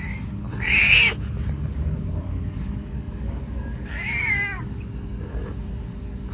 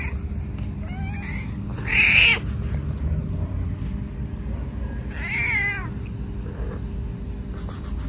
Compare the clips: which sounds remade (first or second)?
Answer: first